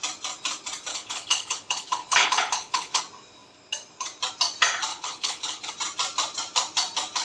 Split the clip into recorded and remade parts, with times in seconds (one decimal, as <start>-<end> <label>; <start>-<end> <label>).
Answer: 0.0-0.9 recorded; 0.9-3.0 remade; 3.0-4.9 recorded; 4.9-5.7 remade; 5.7-7.2 recorded

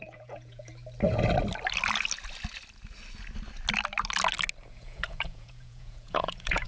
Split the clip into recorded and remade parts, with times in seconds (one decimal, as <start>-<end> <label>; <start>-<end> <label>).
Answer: 0.0-0.7 remade; 0.7-4.7 recorded; 4.7-6.7 remade

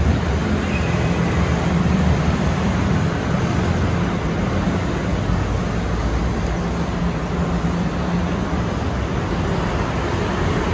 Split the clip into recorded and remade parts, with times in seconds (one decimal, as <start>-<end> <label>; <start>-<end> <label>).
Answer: 0.0-0.4 recorded; 0.4-3.3 remade; 3.3-10.7 recorded

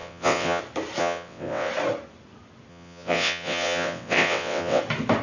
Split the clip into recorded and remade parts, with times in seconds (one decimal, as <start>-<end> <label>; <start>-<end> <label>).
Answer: 0.0-0.6 remade; 0.6-1.0 recorded; 1.0-1.7 remade; 1.7-2.7 recorded; 2.7-4.8 remade; 4.8-5.2 recorded

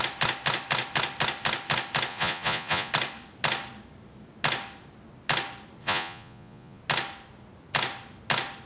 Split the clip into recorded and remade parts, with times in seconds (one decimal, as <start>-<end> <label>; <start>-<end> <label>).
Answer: 0.0-2.1 recorded; 2.1-2.9 remade; 2.9-5.8 recorded; 5.8-6.8 remade; 6.8-8.7 recorded

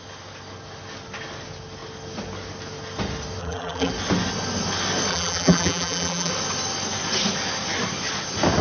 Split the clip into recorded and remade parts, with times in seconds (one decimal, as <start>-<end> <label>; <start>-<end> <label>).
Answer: 0.0-3.4 recorded; 3.4-3.9 remade; 3.9-5.1 recorded; 5.1-6.3 remade; 6.3-8.6 recorded

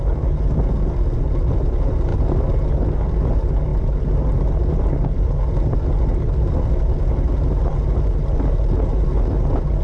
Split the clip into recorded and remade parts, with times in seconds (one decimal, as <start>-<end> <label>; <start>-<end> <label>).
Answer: 0.0-9.8 recorded